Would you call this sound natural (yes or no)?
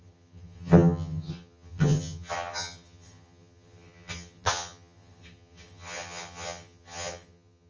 no